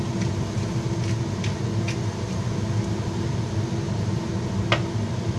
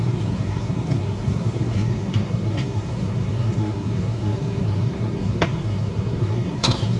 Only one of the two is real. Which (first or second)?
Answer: first